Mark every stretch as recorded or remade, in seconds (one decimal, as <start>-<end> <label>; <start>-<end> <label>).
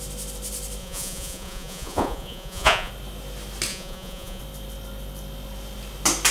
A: 0.0-0.8 recorded; 0.8-2.9 remade; 2.9-3.7 recorded; 3.7-4.4 remade; 4.4-6.3 recorded